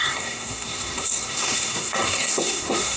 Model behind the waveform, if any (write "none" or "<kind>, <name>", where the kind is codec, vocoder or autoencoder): codec, SNAC